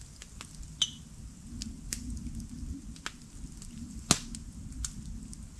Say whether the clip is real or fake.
real